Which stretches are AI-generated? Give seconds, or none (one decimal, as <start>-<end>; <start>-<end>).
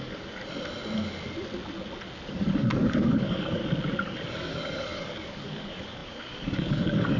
0.0-0.4; 2.3-3.6; 4.3-7.2